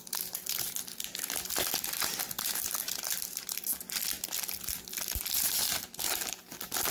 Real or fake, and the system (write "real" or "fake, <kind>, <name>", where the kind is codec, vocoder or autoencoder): real